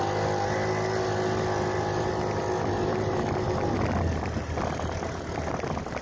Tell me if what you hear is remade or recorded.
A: recorded